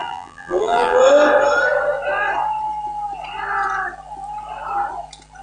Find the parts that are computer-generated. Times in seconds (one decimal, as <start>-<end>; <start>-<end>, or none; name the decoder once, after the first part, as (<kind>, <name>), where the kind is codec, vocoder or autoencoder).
0.0-1.0 (vocoder, BigVGAN v2)